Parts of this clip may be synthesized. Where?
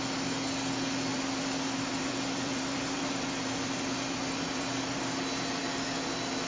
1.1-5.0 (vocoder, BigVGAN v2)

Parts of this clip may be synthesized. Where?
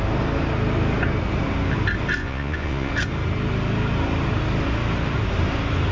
2.2-2.9 (vocoder, Vocos)